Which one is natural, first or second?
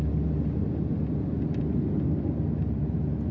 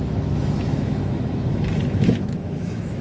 first